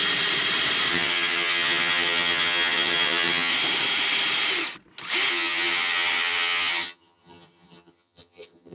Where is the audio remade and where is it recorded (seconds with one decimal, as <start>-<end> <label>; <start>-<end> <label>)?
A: 0.0-0.9 recorded; 0.9-3.5 remade; 3.5-5.3 recorded; 5.3-8.7 remade